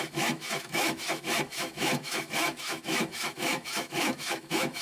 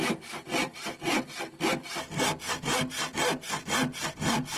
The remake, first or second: first